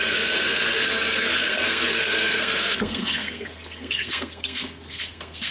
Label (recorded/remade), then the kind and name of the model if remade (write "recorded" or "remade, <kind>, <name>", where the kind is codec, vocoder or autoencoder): remade, codec, SNAC